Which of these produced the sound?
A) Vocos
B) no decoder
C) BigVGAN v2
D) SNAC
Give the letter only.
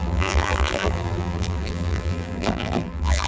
C